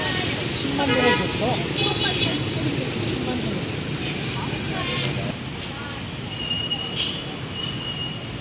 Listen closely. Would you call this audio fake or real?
real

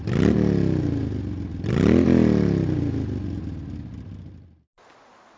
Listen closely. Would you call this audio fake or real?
real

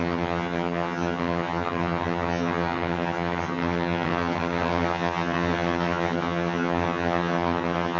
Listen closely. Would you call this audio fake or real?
fake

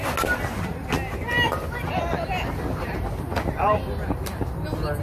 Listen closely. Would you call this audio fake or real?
real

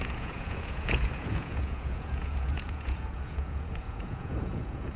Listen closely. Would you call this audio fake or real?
fake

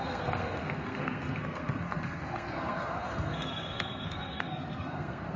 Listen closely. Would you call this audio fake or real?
fake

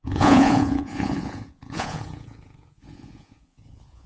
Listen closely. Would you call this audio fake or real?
fake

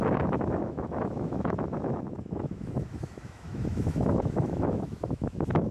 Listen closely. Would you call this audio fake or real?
fake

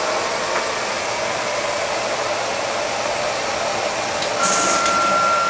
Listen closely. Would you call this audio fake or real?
real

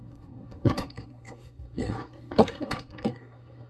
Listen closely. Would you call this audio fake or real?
fake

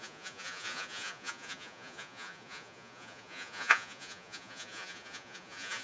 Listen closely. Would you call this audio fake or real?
fake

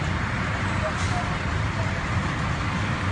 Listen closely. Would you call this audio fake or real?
real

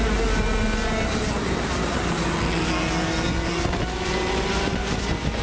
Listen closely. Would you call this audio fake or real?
real